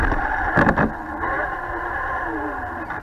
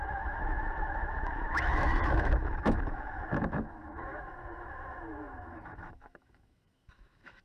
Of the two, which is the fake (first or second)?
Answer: second